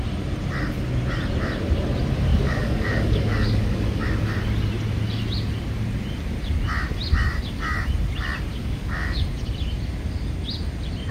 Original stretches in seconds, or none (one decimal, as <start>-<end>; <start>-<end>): 0.0-2.3; 4.0-8.5; 9.2-11.1